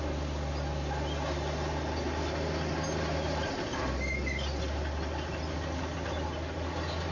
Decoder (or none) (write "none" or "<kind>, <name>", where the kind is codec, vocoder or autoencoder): none